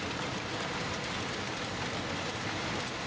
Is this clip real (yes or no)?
yes